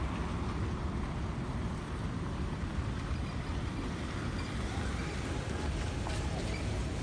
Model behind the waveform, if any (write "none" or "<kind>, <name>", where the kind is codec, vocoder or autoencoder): none